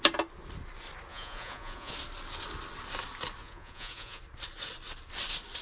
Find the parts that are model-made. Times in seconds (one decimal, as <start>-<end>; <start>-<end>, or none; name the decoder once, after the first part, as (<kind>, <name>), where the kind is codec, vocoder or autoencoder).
1.1-1.9 (vocoder, Vocos); 3.4-4.2

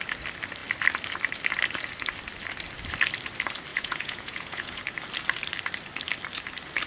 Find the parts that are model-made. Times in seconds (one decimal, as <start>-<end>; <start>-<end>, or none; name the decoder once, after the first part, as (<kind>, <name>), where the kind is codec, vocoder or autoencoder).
3.7-4.8 (vocoder, Vocos)

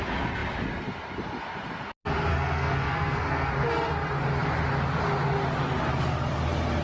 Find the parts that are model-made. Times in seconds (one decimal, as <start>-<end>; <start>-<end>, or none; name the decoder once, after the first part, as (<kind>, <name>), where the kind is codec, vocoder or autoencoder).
2.3-3.5 (codec, SNAC)

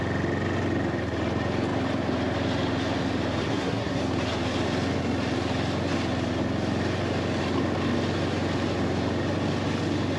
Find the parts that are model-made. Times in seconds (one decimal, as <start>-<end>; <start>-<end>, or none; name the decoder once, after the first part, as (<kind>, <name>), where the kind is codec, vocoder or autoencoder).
3.5-4.0 (codec, SNAC)

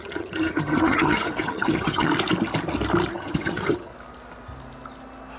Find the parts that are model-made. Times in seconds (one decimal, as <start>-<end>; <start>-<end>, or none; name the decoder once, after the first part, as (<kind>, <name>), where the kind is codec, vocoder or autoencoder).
0.0-2.1 (vocoder, HiFi-GAN); 3.1-3.9